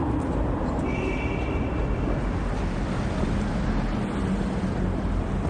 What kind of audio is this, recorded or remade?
recorded